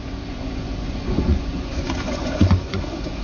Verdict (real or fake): fake